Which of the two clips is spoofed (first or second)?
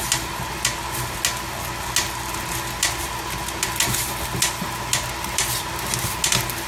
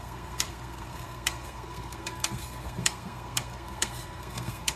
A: second